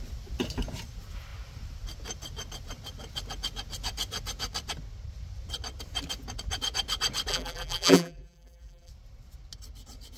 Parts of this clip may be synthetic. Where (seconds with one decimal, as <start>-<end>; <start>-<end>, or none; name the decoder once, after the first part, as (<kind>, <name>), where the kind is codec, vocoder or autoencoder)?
7.3-8.9 (vocoder, BigVGAN v2)